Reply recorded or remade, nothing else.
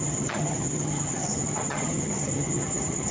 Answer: remade